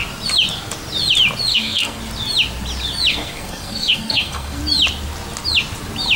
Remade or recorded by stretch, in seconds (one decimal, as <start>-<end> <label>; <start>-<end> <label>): 0.0-1.5 recorded; 1.5-2.0 remade; 2.0-3.1 recorded; 3.1-4.6 remade; 4.6-6.2 recorded

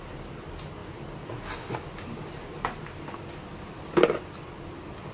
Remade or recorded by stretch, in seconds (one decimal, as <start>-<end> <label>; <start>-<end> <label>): 0.0-5.1 recorded

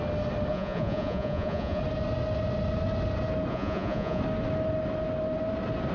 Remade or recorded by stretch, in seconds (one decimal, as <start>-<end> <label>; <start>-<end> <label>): 0.0-0.5 recorded; 0.5-1.8 remade; 1.8-3.5 recorded; 3.5-4.2 remade; 4.2-5.9 recorded

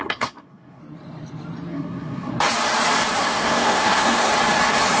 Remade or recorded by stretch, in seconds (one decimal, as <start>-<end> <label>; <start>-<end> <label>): 0.0-0.8 remade; 0.8-1.7 recorded; 1.7-2.3 remade; 2.3-3.2 recorded; 3.2-4.3 remade; 4.3-5.0 recorded

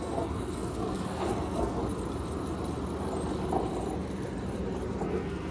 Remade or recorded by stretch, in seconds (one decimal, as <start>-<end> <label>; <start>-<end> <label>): 0.0-1.8 remade; 1.8-5.0 recorded; 5.0-5.5 remade

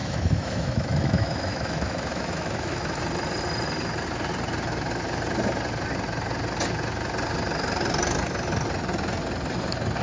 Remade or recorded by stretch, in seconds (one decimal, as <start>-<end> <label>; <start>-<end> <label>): 0.0-3.0 remade; 3.0-10.0 recorded